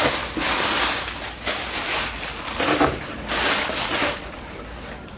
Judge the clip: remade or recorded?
recorded